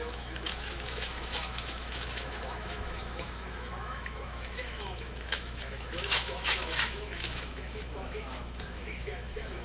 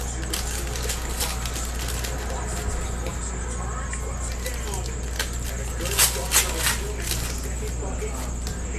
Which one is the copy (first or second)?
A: first